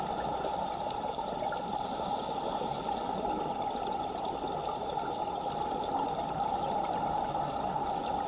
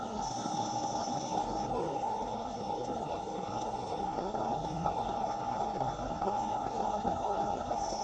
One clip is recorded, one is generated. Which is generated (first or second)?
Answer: second